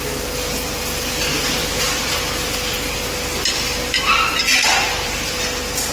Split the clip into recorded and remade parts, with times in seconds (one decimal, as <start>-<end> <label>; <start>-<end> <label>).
0.0-1.6 recorded; 1.6-2.2 remade; 2.2-3.7 recorded; 3.7-4.4 remade; 4.4-4.9 recorded; 4.9-5.4 remade; 5.4-5.9 recorded